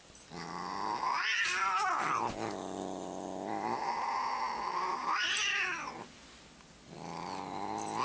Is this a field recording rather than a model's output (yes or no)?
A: yes